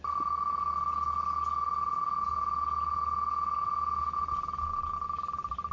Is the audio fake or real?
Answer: real